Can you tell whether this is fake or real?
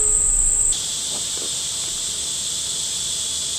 real